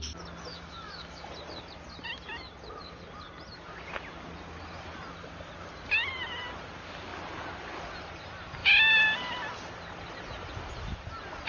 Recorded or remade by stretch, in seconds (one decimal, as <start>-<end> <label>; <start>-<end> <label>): 0.0-0.5 recorded; 0.5-1.3 remade; 1.3-11.5 recorded

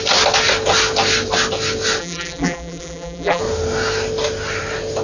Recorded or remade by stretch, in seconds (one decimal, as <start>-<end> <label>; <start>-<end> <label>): 0.0-2.0 recorded; 2.0-3.4 remade; 3.4-5.0 recorded

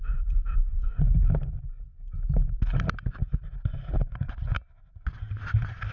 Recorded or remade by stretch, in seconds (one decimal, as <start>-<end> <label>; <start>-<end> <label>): 0.0-5.9 recorded

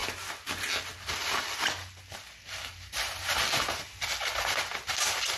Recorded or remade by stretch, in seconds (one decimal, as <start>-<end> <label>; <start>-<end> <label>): 0.0-5.4 recorded

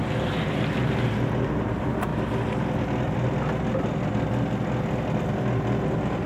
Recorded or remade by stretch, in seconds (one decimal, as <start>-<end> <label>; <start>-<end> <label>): 0.0-2.1 remade; 2.1-6.3 recorded

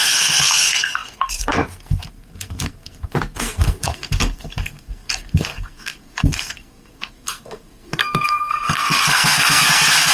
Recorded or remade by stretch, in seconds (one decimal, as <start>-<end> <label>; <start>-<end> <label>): 0.0-10.1 remade

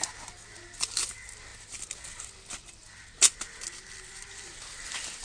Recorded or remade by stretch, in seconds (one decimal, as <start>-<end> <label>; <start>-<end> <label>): 0.0-5.2 recorded

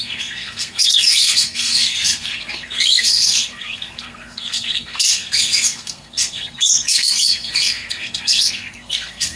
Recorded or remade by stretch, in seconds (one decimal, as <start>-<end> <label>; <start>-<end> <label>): 0.0-9.4 remade